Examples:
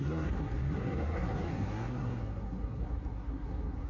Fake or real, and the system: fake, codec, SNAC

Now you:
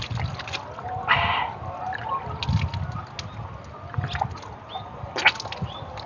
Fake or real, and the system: real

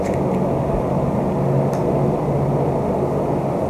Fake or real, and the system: real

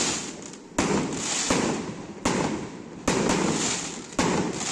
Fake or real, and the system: real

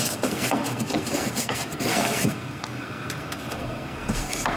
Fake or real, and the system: fake, codec, SNAC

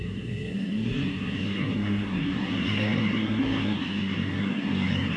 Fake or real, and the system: fake, codec, SNAC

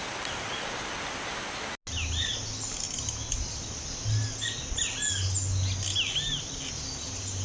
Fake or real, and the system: real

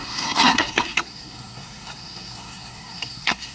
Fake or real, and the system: fake, codec, SNAC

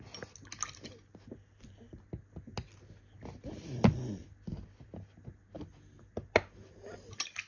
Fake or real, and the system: real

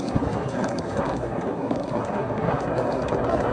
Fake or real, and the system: fake, codec, SNAC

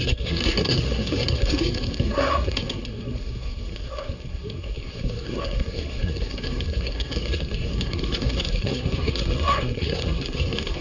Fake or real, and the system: fake, codec, SNAC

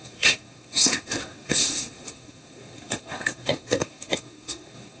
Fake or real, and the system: fake, codec, SNAC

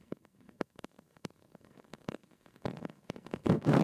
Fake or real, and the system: fake, codec, SNAC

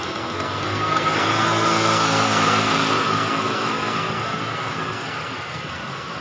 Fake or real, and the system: fake, codec, SNAC